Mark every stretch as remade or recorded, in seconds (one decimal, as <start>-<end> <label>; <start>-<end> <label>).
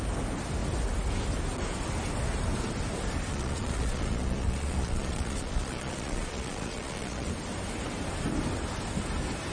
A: 0.0-3.3 recorded; 3.3-7.3 remade; 7.3-9.5 recorded